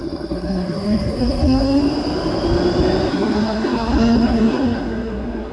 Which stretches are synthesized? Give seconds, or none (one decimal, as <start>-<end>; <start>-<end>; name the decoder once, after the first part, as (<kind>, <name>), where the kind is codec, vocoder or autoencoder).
0.0-1.8 (codec, SNAC); 3.1-5.5

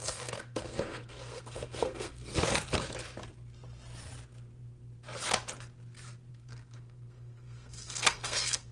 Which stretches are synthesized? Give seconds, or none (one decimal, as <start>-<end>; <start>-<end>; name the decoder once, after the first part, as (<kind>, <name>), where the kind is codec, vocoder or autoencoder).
0.0-2.3 (codec, SNAC); 6.3-8.7

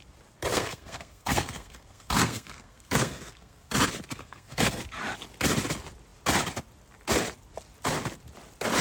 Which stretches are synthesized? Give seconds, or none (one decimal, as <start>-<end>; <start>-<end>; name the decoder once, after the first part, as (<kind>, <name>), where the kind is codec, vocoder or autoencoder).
0.5-3.7 (codec, SNAC); 4.2-4.8

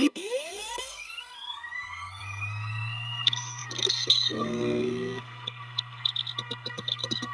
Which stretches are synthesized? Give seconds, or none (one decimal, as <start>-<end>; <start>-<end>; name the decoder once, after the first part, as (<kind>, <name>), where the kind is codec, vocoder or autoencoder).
0.0-7.3 (codec, SNAC)

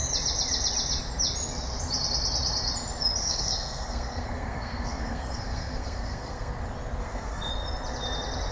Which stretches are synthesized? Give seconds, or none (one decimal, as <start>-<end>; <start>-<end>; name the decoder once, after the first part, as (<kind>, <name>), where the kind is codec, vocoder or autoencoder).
3.2-6.5 (codec, SNAC); 7.0-7.5

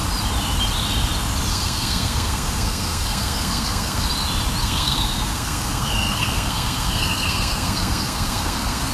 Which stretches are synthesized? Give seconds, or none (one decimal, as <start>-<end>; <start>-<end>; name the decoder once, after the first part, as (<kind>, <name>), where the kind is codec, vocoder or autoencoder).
1.5-4.1 (codec, SNAC); 4.6-8.9

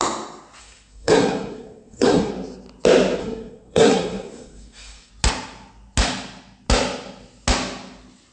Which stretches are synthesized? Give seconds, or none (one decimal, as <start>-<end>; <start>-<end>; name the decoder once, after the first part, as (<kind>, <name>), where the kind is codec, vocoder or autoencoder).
0.6-2.3 (codec, SNAC); 3.2-5.1